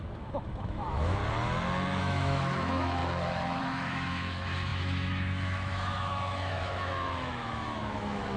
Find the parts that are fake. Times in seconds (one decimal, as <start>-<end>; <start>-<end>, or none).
0.0-1.2; 2.0-3.0; 3.6-8.4